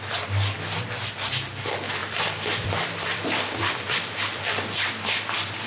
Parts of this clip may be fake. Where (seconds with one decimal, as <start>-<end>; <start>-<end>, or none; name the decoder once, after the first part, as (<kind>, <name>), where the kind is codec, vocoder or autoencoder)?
2.0-5.7 (vocoder, BigVGAN v2)